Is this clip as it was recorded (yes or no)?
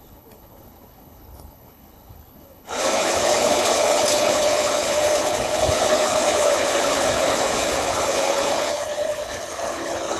no